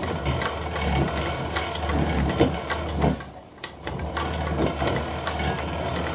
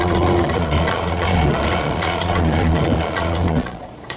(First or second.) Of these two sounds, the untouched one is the first